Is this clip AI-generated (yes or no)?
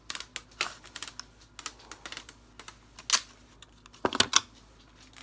no